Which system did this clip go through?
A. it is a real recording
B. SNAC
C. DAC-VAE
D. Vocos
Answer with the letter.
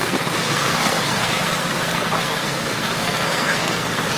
B